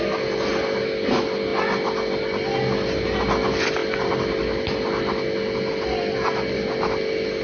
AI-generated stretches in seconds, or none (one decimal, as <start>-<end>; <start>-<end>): none